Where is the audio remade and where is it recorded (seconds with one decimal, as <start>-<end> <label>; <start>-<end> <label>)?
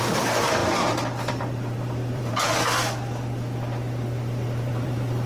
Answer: 0.0-0.6 remade; 0.6-1.3 recorded; 1.3-2.5 remade; 2.5-4.7 recorded; 4.7-5.3 remade